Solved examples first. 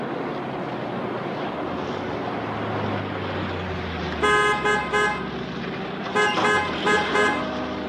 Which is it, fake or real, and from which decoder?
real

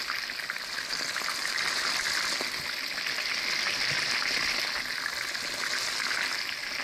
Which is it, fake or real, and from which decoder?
real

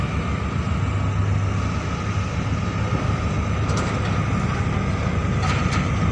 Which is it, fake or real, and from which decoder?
real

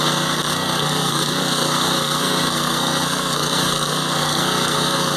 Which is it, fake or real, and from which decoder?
fake, codec, SNAC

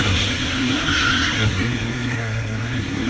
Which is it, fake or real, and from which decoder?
fake, codec, SNAC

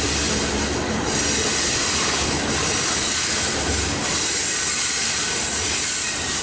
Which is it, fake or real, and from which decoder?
real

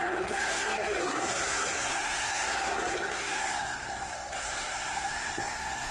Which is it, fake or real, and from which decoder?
fake, codec, SNAC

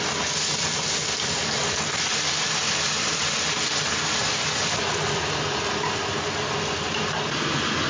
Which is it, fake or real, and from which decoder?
real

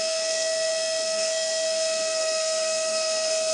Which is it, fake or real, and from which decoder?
fake, codec, SNAC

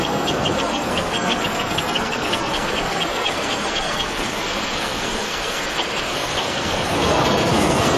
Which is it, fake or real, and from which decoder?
fake, codec, SNAC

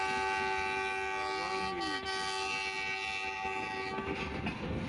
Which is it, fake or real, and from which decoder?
real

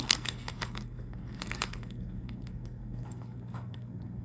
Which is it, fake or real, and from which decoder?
fake, codec, SNAC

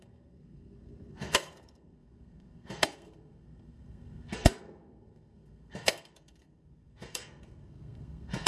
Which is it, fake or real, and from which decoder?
fake, codec, SNAC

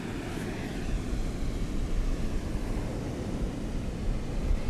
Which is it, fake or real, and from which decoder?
real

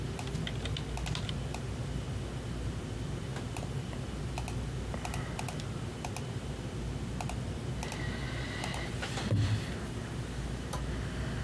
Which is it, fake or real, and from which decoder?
real